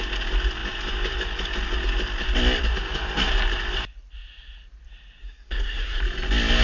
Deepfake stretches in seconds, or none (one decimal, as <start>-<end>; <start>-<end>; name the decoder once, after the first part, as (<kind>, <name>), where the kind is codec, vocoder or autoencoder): 5.2-6.0 (codec, SNAC)